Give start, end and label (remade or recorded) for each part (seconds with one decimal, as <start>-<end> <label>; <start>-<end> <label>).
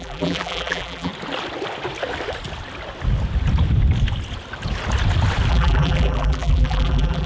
0.0-1.1 remade; 1.1-5.5 recorded; 5.5-7.3 remade